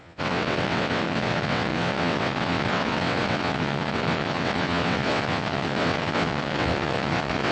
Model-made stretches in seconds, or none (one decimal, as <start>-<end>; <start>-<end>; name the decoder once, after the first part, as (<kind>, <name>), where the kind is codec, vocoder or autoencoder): 0.0-7.5 (vocoder, WaveNeXt)